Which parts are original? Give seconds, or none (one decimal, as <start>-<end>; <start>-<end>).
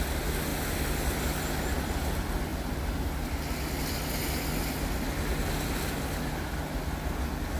0.0-7.6